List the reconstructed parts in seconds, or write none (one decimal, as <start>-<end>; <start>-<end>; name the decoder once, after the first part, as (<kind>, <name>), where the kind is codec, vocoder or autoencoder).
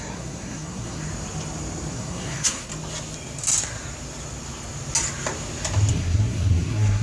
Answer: 0.0-1.0 (codec, SNAC); 1.9-2.7; 5.9-7.0